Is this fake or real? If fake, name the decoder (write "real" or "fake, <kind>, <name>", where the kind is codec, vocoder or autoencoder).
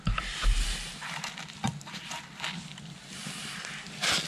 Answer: real